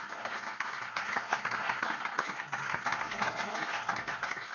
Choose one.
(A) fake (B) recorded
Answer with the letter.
A